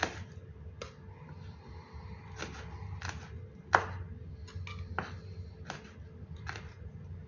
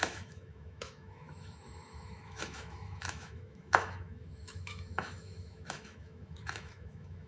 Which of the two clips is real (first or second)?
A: first